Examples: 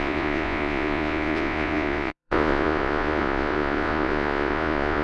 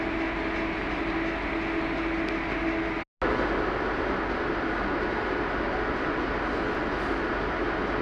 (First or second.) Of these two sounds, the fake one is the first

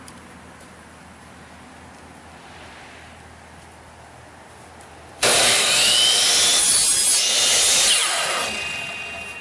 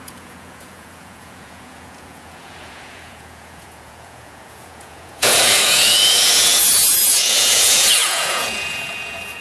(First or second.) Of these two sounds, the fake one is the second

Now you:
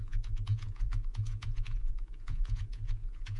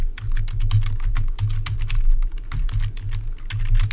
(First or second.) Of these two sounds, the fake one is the first